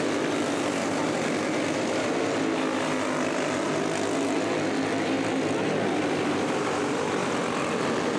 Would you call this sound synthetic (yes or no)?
no